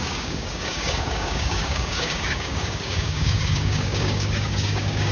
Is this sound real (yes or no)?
no